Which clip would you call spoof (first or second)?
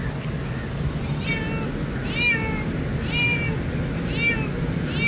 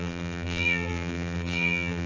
second